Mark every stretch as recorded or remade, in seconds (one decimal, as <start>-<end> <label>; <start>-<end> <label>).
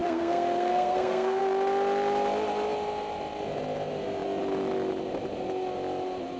0.0-1.4 remade; 1.4-6.4 recorded